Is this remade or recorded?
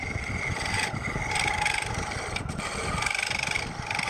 recorded